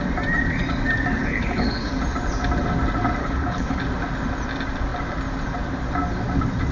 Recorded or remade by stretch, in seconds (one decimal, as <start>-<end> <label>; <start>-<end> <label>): 0.0-1.2 recorded; 1.2-1.9 remade; 1.9-3.2 recorded; 3.2-3.8 remade; 3.8-6.7 recorded